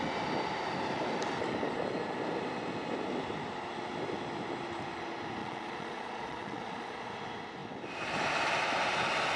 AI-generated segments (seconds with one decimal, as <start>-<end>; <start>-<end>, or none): 5.4-7.1